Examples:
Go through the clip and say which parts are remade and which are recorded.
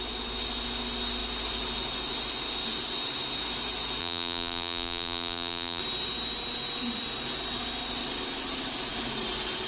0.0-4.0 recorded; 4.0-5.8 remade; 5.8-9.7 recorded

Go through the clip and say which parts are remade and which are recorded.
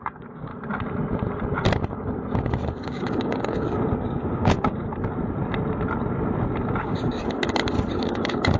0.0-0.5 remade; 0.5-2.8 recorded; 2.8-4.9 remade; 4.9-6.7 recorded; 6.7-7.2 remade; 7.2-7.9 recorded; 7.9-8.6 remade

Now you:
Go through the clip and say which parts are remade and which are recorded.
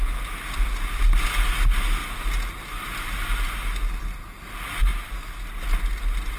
0.0-6.4 recorded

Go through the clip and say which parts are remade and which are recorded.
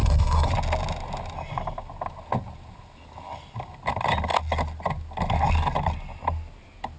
0.0-0.5 remade; 0.5-7.0 recorded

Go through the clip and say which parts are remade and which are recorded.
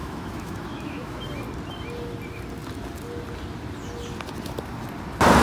0.0-1.2 remade; 1.2-5.4 recorded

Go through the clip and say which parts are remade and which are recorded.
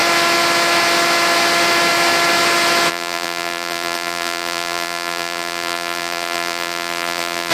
0.0-2.9 recorded; 2.9-7.5 remade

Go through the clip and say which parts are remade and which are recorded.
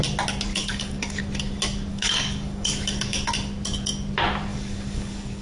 0.0-0.5 recorded; 0.5-1.2 remade; 1.2-1.9 recorded; 1.9-3.3 remade; 3.3-4.5 recorded; 4.5-5.4 remade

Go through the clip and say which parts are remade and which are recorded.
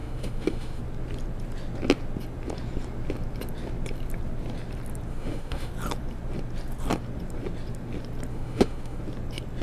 0.0-0.8 remade; 0.8-5.1 recorded; 5.1-5.7 remade; 5.7-8.3 recorded; 8.3-9.0 remade; 9.0-9.6 recorded